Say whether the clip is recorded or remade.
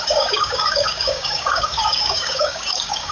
remade